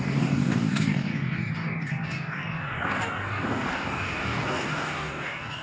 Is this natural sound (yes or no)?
no